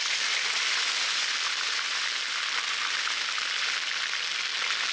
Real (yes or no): yes